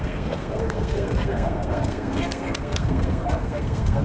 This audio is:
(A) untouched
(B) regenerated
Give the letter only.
B